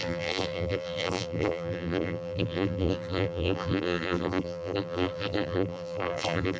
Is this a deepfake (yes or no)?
yes